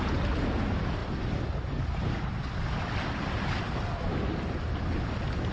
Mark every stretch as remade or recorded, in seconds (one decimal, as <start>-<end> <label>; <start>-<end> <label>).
0.0-5.5 recorded

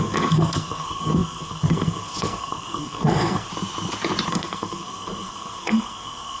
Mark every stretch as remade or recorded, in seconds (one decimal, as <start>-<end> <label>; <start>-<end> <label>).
0.0-3.5 remade; 3.5-4.3 recorded; 4.3-6.4 remade